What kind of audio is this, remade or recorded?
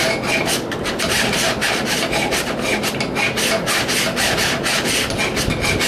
recorded